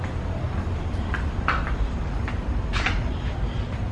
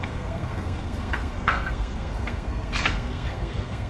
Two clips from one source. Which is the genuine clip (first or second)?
first